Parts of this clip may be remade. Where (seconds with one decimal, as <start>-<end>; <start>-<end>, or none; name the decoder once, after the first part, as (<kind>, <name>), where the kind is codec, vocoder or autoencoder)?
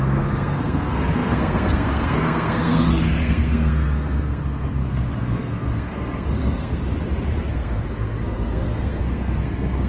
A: 0.0-6.8 (codec, SNAC); 7.5-9.9